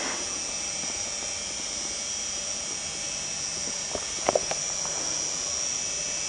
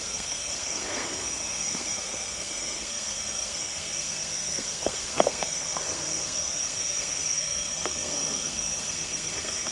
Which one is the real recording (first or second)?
first